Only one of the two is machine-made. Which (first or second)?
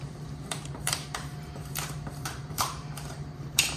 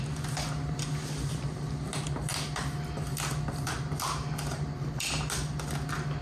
first